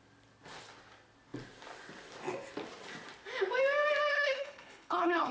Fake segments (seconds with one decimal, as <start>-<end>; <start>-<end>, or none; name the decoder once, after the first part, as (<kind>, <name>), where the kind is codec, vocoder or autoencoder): 4.1-5.3 (codec, HILCodec)